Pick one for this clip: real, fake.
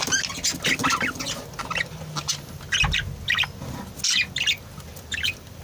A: real